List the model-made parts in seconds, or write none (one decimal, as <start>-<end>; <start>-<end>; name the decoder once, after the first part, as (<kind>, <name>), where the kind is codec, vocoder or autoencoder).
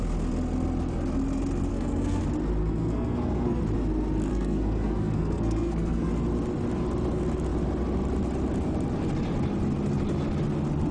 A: 1.7-2.2 (codec, SNAC); 2.6-3.6; 4.3-6.1